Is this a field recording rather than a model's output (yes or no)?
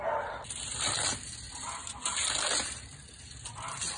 yes